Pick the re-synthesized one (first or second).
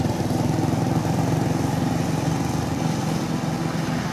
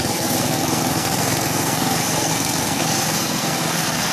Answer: second